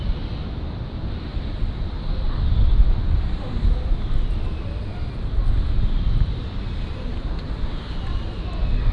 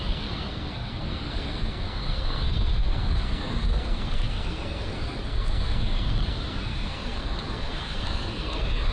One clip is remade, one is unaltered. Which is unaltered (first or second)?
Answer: first